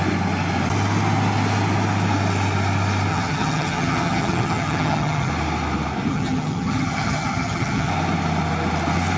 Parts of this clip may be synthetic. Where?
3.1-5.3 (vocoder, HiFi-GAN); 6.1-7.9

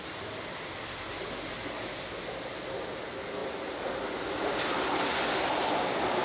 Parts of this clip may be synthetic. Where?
none